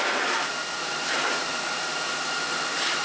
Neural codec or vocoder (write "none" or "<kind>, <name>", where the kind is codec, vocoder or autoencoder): vocoder, BigVGAN v2